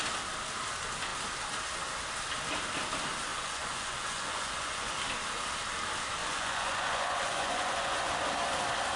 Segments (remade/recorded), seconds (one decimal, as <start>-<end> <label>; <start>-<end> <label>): 0.0-3.3 recorded; 3.3-4.9 remade; 4.9-6.2 recorded; 6.2-8.1 remade; 8.1-9.0 recorded